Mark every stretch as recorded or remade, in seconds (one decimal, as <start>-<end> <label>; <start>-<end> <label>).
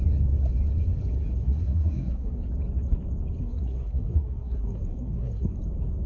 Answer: 0.0-1.4 recorded; 1.4-2.4 remade; 2.4-3.4 recorded; 3.4-5.6 remade; 5.6-6.1 recorded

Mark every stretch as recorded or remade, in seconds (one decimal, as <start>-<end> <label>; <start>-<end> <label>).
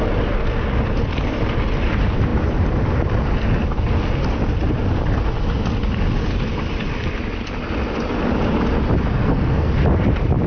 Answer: 0.0-9.1 recorded; 9.1-9.7 remade; 9.7-10.5 recorded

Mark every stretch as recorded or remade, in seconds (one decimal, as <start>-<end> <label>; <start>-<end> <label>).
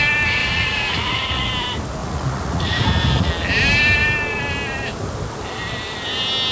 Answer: 0.0-0.4 recorded; 0.4-1.5 remade; 1.5-2.0 recorded; 2.0-3.3 remade; 3.3-6.5 recorded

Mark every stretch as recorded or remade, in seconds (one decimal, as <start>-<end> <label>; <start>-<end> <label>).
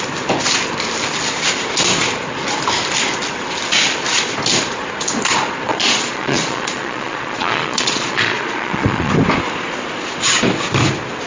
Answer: 0.0-5.7 recorded; 5.7-9.1 remade; 9.1-11.3 recorded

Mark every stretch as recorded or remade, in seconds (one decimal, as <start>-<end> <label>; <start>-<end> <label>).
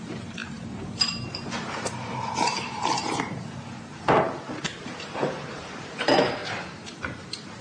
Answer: 0.0-7.6 remade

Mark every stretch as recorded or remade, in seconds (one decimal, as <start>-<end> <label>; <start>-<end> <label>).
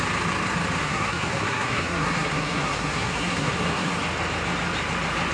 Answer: 0.0-0.8 recorded; 0.8-3.9 remade; 3.9-5.3 recorded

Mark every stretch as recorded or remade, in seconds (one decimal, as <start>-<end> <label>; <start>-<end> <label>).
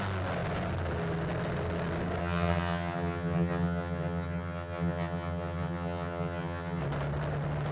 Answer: 0.0-2.2 recorded; 2.2-6.8 remade; 6.8-7.7 recorded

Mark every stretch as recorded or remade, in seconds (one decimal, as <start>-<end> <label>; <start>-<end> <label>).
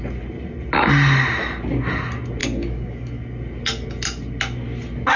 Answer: 0.0-2.4 recorded; 2.4-3.2 remade; 3.2-5.2 recorded